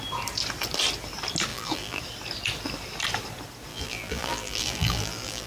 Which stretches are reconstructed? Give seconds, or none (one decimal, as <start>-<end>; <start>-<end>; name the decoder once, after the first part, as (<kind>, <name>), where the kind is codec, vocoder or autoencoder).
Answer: 1.5-2.0 (vocoder, BigVGAN v2); 3.7-5.5